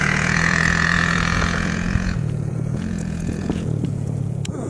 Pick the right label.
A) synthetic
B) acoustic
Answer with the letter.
A